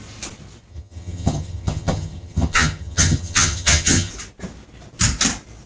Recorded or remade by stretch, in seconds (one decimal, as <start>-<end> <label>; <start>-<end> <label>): 0.0-0.7 recorded; 0.7-4.1 remade; 4.1-5.7 recorded